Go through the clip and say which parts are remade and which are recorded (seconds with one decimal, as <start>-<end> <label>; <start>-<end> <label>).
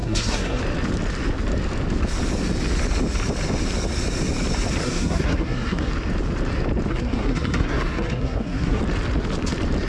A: 0.0-0.6 remade; 0.6-4.8 recorded; 4.8-5.9 remade; 5.9-6.9 recorded; 6.9-8.8 remade; 8.8-9.9 recorded